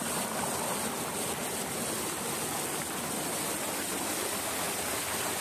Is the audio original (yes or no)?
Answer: yes